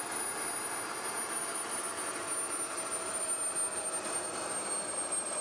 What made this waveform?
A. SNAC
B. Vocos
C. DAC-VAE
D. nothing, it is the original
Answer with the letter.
D